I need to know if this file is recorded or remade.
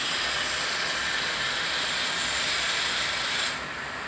remade